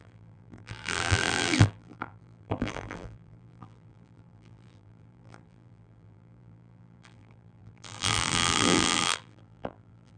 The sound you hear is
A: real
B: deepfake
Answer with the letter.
B